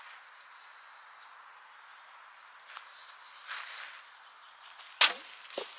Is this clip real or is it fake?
real